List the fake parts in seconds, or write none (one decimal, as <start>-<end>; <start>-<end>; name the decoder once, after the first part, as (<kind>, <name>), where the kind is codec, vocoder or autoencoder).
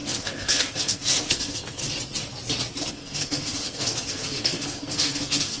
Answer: 0.0-1.8 (codec, SNAC); 2.9-5.6